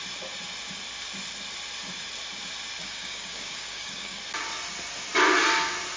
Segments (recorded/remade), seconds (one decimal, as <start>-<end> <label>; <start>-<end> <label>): 0.0-2.8 recorded; 2.8-4.2 remade; 4.2-6.0 recorded